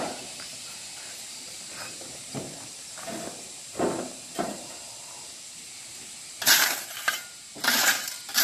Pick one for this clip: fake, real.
fake